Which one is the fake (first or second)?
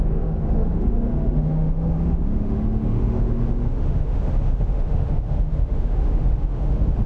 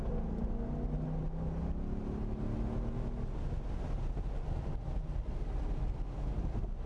first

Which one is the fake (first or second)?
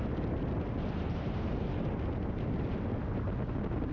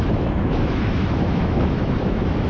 second